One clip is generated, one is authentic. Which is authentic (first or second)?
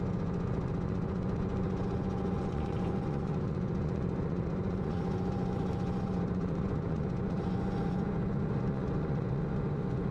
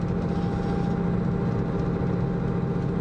second